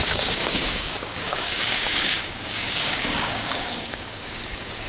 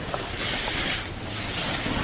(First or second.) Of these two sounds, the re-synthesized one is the first